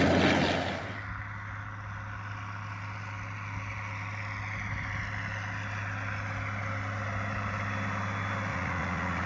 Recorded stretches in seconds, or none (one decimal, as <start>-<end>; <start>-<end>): 0.0-8.5